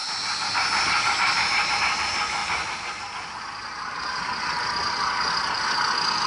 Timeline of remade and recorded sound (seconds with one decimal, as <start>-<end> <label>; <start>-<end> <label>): 0.0-6.3 recorded